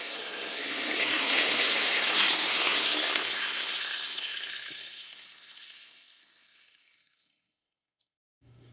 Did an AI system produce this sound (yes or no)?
yes